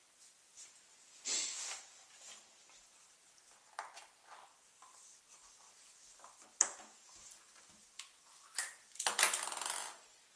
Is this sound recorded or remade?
recorded